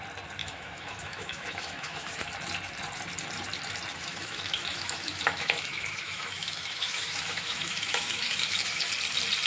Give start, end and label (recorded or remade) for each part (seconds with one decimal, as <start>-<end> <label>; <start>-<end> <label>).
0.0-0.4 recorded; 0.4-2.2 remade; 2.2-3.9 recorded; 3.9-8.9 remade; 8.9-9.5 recorded